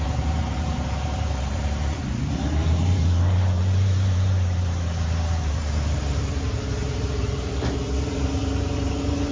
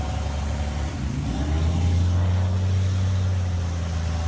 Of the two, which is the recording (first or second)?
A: second